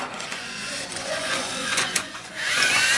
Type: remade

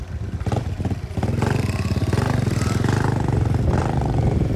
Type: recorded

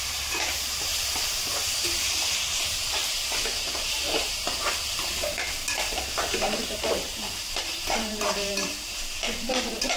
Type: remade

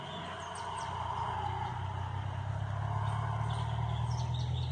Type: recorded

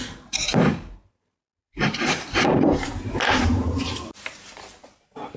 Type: remade